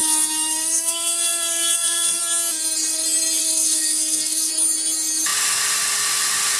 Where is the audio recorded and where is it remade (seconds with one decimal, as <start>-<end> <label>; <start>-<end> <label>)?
0.0-2.2 remade; 2.2-3.4 recorded; 3.4-4.5 remade; 4.5-6.6 recorded

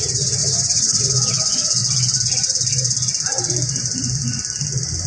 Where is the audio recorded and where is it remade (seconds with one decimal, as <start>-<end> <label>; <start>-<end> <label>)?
0.0-0.4 recorded; 0.4-1.0 remade; 1.0-5.1 recorded